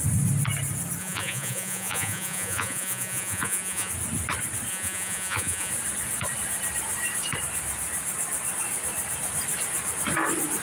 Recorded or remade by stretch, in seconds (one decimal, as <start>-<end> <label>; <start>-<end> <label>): 0.0-1.0 recorded; 1.0-3.9 remade; 3.9-4.7 recorded; 4.7-5.7 remade; 5.7-10.6 recorded

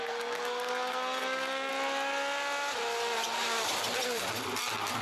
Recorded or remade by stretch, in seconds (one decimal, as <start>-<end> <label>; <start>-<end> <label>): 0.0-1.7 remade; 1.7-5.0 recorded

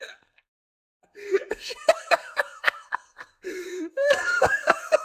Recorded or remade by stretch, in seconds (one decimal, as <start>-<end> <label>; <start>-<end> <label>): 0.0-5.0 remade